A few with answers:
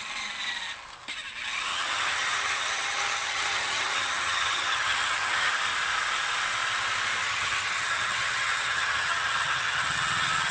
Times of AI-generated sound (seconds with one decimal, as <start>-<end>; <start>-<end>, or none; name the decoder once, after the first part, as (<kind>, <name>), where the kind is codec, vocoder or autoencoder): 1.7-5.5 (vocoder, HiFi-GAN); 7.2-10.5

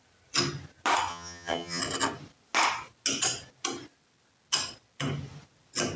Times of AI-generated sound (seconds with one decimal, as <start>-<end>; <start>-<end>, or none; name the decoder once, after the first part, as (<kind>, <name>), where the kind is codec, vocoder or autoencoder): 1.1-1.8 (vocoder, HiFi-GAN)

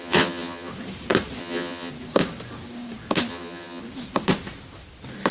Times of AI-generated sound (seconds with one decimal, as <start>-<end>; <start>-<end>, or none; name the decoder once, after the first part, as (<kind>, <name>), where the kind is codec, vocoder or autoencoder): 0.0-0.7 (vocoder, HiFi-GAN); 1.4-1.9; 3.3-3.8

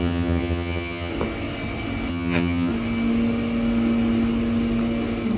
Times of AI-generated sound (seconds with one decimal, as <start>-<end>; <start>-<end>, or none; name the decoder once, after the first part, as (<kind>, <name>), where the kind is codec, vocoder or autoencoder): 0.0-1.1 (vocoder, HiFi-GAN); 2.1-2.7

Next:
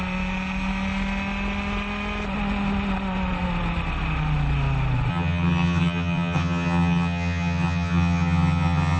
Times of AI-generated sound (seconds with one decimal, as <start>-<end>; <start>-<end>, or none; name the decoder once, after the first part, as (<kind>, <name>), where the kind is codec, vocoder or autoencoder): 5.1-9.0 (vocoder, HiFi-GAN)